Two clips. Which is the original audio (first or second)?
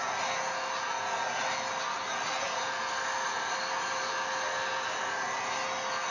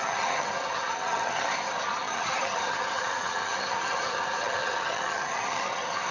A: first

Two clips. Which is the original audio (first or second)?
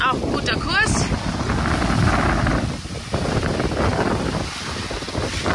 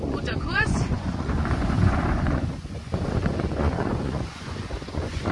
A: first